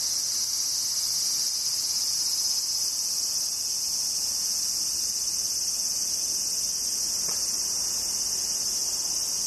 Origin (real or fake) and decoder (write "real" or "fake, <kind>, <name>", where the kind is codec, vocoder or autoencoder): real